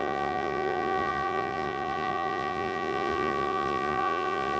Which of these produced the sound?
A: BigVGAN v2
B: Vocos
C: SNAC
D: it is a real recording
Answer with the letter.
B